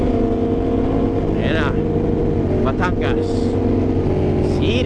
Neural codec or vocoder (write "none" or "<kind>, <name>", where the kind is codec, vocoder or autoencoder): none